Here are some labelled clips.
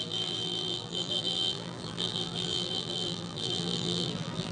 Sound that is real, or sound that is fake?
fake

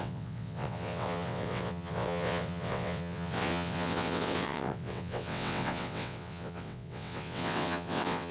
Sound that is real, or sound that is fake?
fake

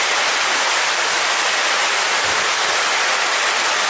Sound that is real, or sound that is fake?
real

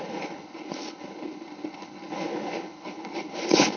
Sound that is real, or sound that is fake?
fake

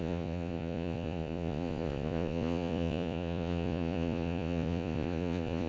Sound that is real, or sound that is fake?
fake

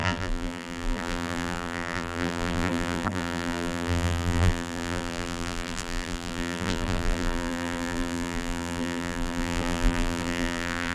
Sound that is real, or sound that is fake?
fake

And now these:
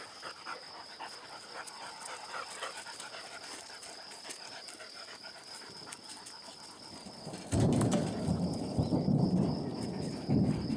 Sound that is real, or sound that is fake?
real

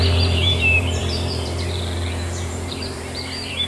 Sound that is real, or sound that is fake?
fake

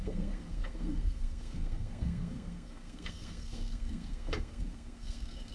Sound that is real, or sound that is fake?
fake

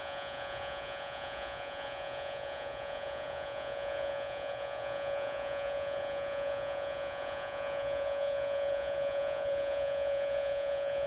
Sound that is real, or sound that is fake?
fake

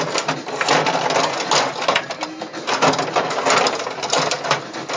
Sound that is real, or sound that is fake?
real